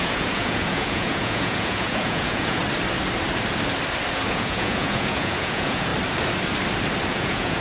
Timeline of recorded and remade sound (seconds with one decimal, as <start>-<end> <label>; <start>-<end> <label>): 0.0-2.6 remade; 2.6-4.1 recorded; 4.1-5.9 remade; 5.9-7.1 recorded; 7.1-7.6 remade